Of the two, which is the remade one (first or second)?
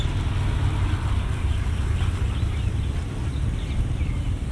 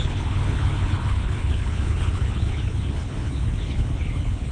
second